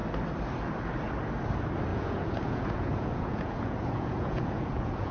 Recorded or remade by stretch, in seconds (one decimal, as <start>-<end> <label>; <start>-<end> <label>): 0.0-1.9 recorded; 1.9-5.1 remade